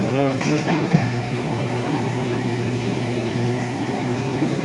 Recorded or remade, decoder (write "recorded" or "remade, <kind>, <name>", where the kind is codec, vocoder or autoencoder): remade, codec, SNAC